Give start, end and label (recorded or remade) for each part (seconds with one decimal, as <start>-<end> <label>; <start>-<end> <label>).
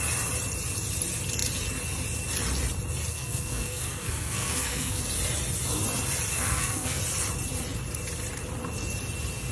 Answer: 0.0-3.1 recorded; 3.1-5.0 remade; 5.0-6.3 recorded; 6.3-7.0 remade; 7.0-9.5 recorded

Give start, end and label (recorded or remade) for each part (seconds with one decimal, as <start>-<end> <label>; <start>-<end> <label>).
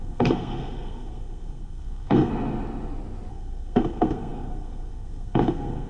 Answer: 0.0-2.3 remade; 2.3-3.3 recorded; 3.3-5.9 remade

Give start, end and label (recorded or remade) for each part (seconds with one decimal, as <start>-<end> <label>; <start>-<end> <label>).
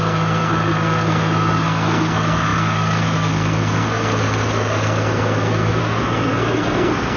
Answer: 0.0-7.2 remade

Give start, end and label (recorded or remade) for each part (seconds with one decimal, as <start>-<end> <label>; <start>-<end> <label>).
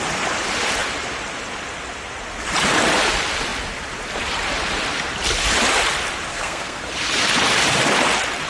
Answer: 0.0-6.3 recorded; 6.3-6.8 remade; 6.8-8.5 recorded